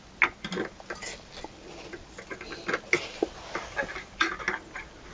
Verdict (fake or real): real